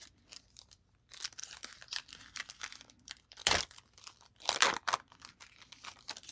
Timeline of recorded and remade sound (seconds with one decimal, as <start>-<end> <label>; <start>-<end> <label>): 0.0-6.3 remade